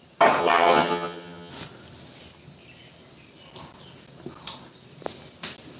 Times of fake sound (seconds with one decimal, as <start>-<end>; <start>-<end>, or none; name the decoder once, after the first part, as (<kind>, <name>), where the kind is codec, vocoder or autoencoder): 0.4-1.5 (vocoder, HiFi-GAN)